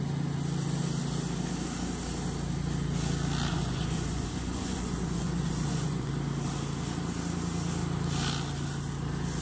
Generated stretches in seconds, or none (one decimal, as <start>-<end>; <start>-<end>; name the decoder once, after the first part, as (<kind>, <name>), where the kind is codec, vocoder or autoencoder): 3.5-6.1 (vocoder, Vocos)